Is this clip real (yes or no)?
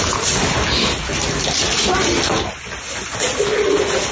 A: yes